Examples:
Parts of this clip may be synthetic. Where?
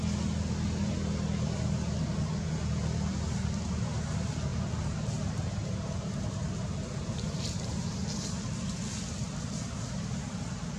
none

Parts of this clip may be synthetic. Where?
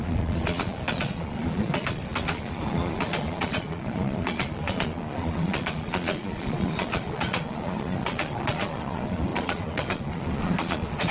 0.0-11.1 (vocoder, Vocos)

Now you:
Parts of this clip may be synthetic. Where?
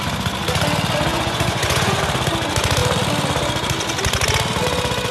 1.1-2.0 (vocoder, Vocos)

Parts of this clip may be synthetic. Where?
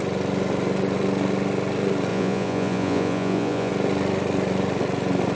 2.1-3.7 (vocoder, Vocos)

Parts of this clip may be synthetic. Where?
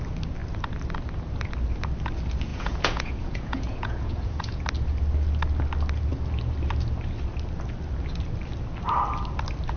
2.5-4.6 (vocoder, Vocos)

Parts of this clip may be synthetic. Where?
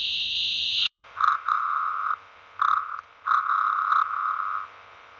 0.7-1.9 (vocoder, Vocos)